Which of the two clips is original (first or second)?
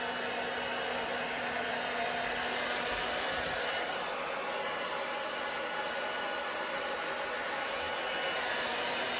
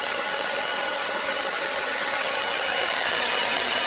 first